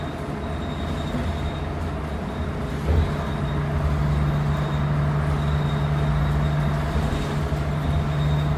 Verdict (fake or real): real